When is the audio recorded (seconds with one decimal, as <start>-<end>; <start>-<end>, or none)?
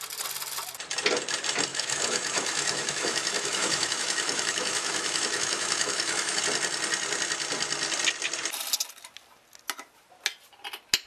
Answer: 0.0-1.7; 6.4-11.1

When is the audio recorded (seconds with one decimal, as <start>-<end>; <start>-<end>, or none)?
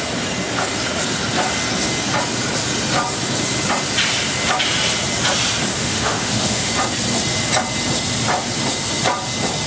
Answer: 0.0-5.7; 6.7-9.7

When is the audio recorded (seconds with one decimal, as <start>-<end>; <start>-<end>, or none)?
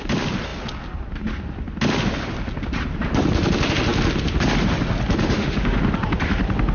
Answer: 0.0-5.2; 5.8-6.7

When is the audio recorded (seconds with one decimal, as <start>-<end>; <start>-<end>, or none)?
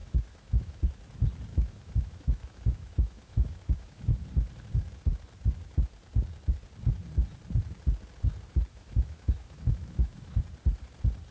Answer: 0.8-1.5; 4.2-8.7; 10.4-11.3